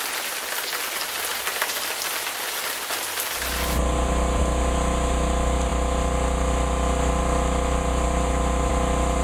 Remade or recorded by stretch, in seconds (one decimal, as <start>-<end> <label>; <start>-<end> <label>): 0.0-9.2 recorded